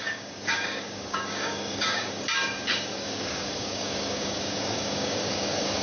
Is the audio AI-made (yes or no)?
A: yes